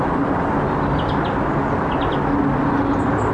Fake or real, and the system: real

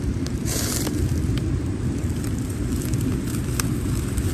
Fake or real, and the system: fake, vocoder, BigVGAN v2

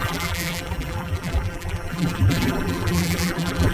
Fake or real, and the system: fake, vocoder, BigVGAN v2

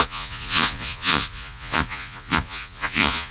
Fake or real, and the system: fake, vocoder, Vocos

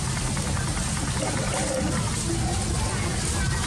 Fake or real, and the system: real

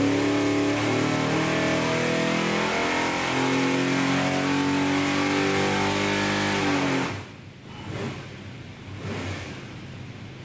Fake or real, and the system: real